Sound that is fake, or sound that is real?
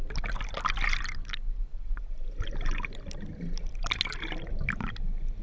real